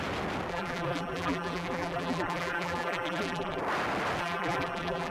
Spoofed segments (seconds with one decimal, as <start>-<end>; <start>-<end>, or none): 0.5-3.6; 4.2-5.1

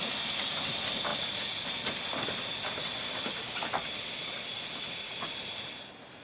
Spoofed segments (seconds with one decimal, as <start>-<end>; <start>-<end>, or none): none

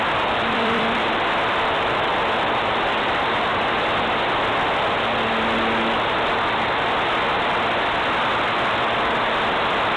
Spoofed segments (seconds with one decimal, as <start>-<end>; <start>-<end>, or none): 0.0-3.5; 8.6-10.0

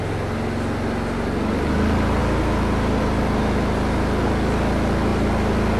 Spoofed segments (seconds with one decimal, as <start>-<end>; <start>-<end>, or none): none

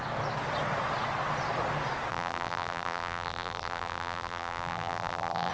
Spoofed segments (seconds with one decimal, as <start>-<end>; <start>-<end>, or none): 2.1-5.5

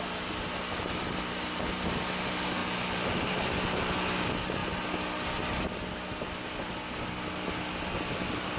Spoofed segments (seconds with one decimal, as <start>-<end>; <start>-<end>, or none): none